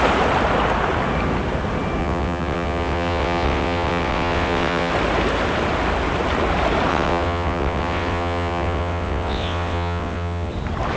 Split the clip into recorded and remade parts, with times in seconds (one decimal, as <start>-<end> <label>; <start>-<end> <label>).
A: 0.0-2.0 recorded; 2.0-4.9 remade; 4.9-6.9 recorded; 6.9-10.5 remade; 10.5-11.0 recorded